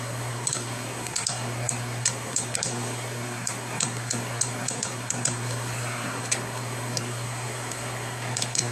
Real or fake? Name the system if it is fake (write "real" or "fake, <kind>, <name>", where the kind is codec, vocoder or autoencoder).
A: fake, codec, SNAC